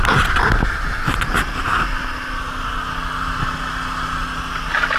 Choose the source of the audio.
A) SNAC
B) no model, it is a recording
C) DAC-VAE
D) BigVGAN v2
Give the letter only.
B